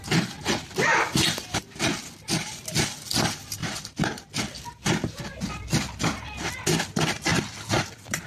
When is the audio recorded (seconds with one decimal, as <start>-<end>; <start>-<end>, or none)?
none